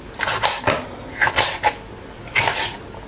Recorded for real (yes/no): yes